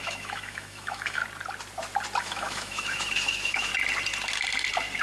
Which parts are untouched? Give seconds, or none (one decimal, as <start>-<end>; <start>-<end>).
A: 1.2-2.2; 3.7-5.0